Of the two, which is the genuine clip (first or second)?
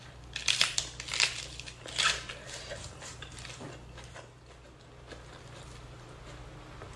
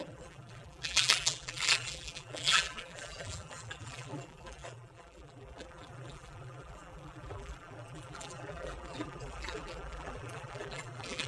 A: first